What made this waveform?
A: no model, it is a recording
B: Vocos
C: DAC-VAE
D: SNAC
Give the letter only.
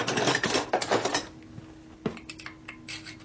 A